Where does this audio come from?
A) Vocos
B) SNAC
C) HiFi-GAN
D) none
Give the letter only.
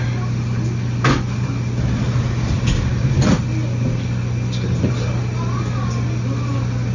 D